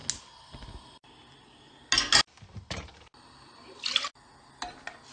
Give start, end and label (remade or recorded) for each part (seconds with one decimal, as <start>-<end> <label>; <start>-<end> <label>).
0.0-5.1 recorded